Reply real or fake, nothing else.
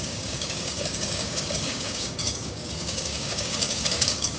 fake